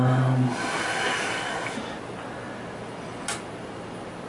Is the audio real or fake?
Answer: real